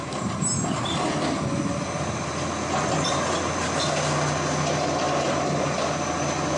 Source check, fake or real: real